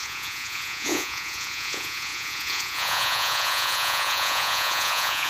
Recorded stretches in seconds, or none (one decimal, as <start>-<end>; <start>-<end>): none